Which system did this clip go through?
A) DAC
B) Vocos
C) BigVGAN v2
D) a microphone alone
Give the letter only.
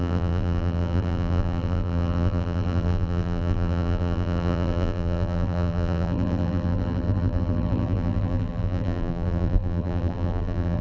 C